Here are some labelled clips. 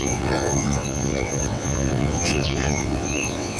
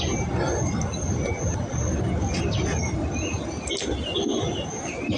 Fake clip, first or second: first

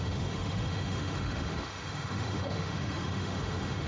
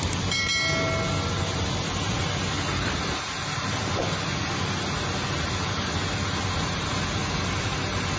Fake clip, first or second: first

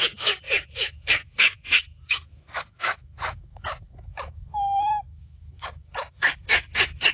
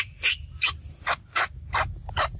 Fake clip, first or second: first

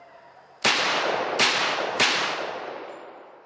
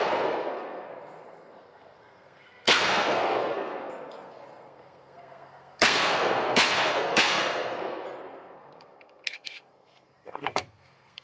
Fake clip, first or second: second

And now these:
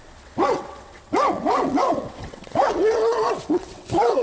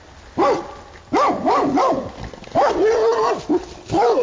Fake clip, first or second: first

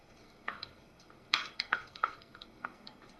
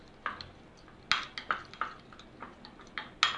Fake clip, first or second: first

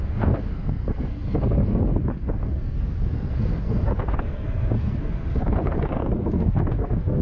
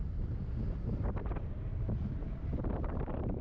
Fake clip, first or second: first